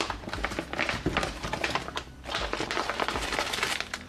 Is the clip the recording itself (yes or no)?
no